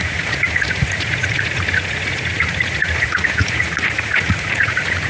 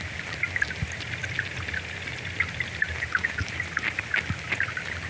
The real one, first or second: second